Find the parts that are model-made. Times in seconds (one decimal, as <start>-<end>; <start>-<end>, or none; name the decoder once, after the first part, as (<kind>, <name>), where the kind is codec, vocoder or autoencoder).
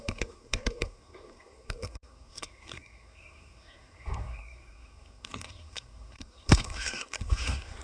0.0-7.8 (codec, SNAC)